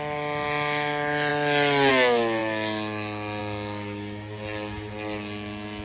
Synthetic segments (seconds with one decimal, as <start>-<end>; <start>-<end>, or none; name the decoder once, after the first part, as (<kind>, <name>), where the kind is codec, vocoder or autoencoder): none